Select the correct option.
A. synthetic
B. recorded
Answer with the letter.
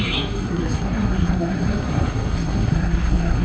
A